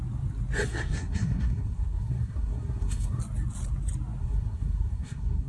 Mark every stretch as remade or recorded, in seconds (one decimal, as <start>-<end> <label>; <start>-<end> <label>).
0.0-0.7 recorded; 0.7-3.2 remade; 3.2-4.2 recorded; 4.2-5.5 remade